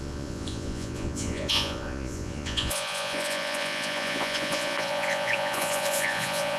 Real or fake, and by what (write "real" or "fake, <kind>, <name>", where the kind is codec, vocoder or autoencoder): fake, vocoder, Vocos